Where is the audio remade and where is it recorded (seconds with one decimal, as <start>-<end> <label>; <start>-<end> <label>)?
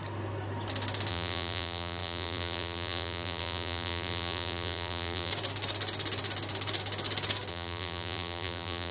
0.0-1.1 recorded; 1.1-5.3 remade; 5.3-7.5 recorded; 7.5-8.9 remade